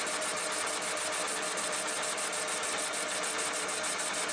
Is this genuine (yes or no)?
yes